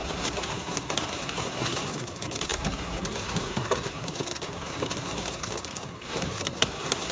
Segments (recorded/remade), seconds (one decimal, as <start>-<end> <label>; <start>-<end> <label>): 0.0-7.1 remade